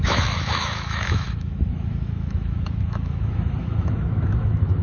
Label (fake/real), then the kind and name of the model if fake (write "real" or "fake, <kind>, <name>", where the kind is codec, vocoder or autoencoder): fake, autoencoder, DAC-VAE